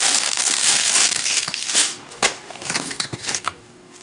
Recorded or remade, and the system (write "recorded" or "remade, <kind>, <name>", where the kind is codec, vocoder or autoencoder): remade, codec, DAC